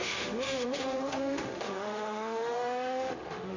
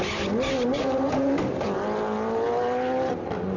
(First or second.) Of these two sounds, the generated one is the first